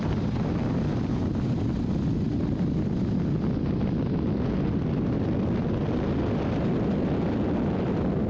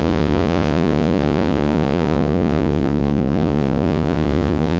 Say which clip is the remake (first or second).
second